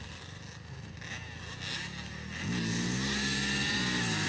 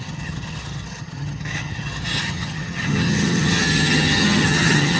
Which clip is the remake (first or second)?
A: second